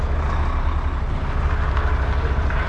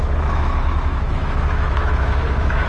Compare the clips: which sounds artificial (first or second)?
second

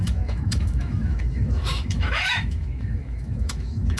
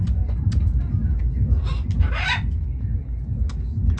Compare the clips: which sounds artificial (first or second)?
first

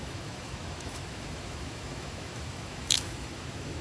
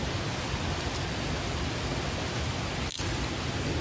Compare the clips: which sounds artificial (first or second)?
first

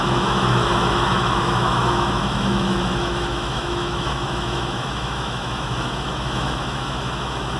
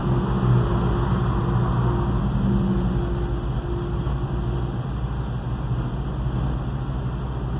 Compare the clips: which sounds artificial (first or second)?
first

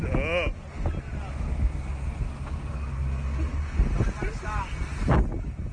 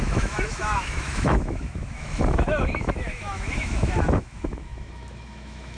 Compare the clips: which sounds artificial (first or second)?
second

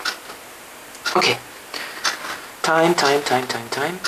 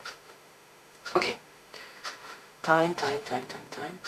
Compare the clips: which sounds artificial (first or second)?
second